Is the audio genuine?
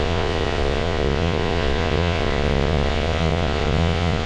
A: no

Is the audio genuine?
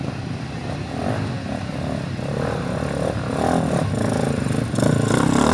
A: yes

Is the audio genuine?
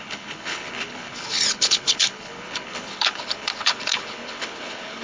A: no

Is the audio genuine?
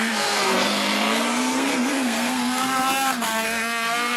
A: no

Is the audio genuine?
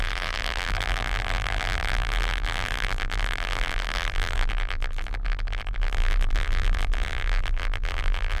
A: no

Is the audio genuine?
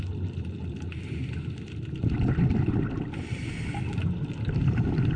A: yes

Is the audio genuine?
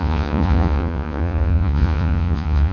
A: no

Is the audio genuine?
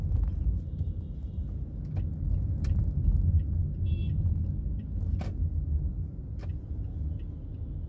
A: yes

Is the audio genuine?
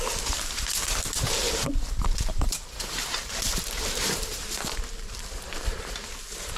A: no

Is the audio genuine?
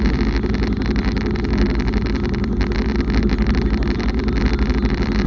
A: yes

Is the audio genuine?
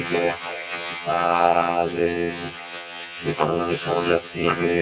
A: no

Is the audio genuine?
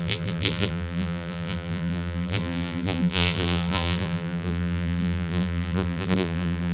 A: no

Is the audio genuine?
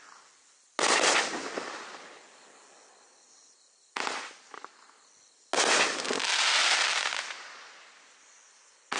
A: yes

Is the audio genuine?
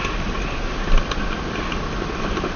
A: yes